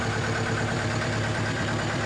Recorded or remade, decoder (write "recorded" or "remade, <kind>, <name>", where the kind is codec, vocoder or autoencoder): remade, vocoder, BigVGAN v2